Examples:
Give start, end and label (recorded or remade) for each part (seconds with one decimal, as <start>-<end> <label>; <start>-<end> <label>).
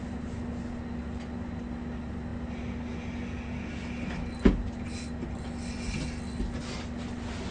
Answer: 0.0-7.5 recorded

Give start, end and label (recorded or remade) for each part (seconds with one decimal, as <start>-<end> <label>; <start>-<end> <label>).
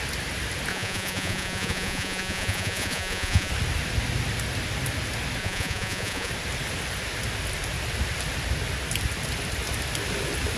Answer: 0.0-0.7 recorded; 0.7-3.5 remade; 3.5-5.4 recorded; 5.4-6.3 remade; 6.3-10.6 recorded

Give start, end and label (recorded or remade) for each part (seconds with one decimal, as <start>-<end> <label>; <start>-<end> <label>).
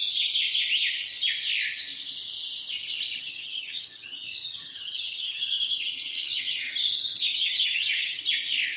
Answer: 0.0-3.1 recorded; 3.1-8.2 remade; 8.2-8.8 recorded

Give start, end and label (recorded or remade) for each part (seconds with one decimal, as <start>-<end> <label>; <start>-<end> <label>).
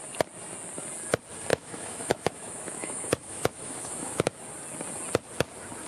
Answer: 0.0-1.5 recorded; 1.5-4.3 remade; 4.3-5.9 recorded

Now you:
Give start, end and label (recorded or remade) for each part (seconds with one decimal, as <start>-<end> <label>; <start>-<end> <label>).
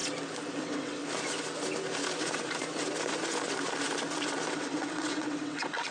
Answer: 0.0-0.6 recorded; 0.6-1.0 remade; 1.0-4.5 recorded; 4.5-5.9 remade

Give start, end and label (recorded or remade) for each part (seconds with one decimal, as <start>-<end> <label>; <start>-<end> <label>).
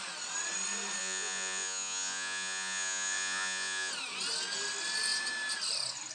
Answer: 0.0-1.0 recorded; 1.0-3.9 remade; 3.9-6.1 recorded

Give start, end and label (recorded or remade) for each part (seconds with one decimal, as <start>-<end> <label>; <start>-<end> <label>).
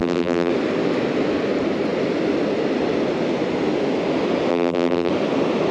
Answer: 0.0-0.5 remade; 0.5-4.5 recorded; 4.5-5.1 remade; 5.1-5.7 recorded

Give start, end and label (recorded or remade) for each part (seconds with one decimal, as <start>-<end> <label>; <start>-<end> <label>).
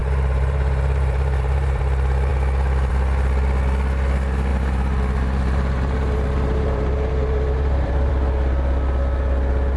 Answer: 0.0-1.8 remade; 1.8-4.5 recorded; 4.5-8.1 remade; 8.1-9.8 recorded